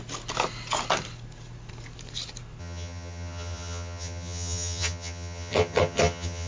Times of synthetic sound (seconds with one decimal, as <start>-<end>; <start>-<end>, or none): 2.6-6.5